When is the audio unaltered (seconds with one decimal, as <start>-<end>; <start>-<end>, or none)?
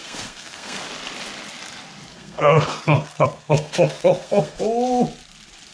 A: 0.8-2.1; 4.6-5.7